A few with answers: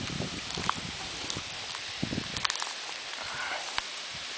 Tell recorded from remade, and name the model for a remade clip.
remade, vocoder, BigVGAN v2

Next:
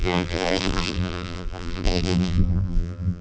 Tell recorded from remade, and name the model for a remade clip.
remade, vocoder, BigVGAN v2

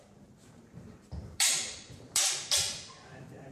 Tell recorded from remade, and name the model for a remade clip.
remade, vocoder, BigVGAN v2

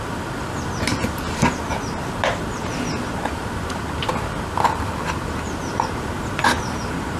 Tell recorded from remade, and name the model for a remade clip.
recorded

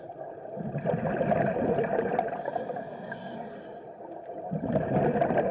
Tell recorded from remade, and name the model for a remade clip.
recorded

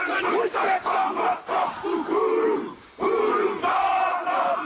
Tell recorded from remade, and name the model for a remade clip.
recorded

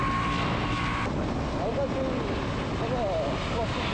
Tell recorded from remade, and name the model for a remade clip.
recorded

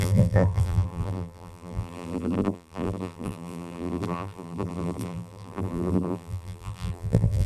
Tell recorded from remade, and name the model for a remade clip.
remade, vocoder, BigVGAN v2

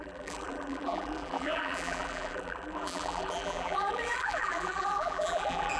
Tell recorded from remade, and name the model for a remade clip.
remade, vocoder, BigVGAN v2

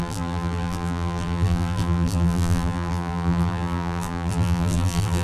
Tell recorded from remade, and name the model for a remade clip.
remade, vocoder, BigVGAN v2